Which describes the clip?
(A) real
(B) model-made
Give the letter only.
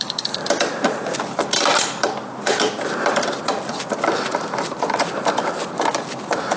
B